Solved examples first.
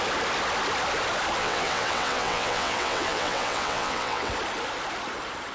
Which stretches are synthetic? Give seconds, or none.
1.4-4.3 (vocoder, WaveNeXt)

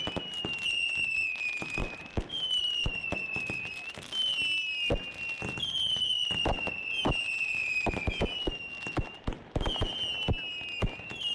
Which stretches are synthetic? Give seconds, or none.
none

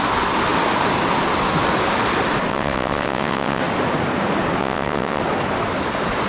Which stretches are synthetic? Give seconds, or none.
2.5-3.6 (vocoder, WaveNeXt); 4.6-5.2

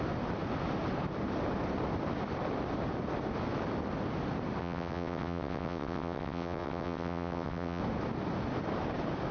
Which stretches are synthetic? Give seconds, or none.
4.6-7.8 (vocoder, WaveNeXt)

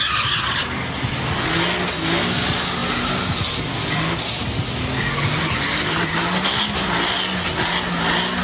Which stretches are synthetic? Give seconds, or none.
none

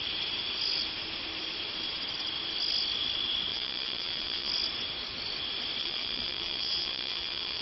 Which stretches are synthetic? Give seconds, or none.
3.5-4.5 (vocoder, WaveNeXt); 5.8-7.6

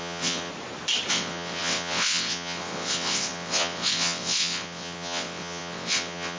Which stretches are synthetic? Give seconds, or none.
0.0-0.5 (vocoder, WaveNeXt); 1.1-6.4

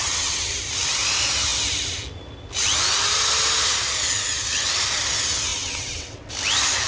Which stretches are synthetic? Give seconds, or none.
0.0-0.5 (vocoder, WaveNeXt); 5.5-6.3